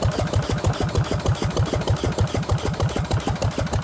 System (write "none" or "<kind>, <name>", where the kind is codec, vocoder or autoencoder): none